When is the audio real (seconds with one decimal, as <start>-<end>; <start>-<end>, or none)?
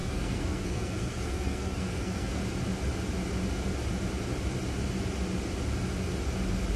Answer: 2.4-6.8